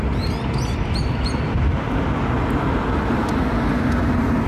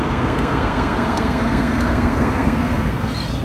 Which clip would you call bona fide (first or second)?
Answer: first